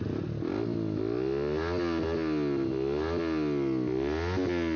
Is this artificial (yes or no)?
no